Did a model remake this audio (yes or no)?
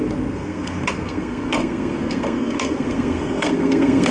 yes